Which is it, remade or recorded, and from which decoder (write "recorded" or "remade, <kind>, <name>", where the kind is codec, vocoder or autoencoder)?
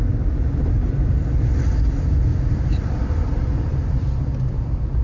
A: remade, vocoder, BigVGAN v2